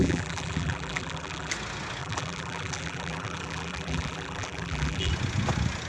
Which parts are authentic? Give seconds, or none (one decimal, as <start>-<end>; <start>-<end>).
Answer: 1.5-2.0; 5.1-5.9